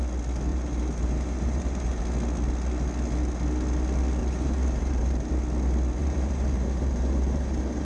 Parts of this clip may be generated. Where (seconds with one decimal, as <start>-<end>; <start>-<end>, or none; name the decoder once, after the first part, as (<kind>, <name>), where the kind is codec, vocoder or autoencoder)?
0.5-2.0 (vocoder, BigVGAN v2); 4.2-5.3; 6.0-7.8